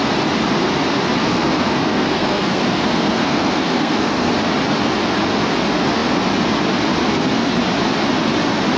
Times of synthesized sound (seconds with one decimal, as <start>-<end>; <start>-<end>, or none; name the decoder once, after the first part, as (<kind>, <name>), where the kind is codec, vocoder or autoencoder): 1.2-4.3 (codec, SNAC); 7.1-7.6